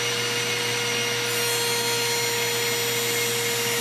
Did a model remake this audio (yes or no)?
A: no